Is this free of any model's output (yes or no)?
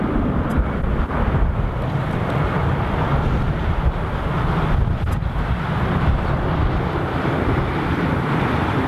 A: no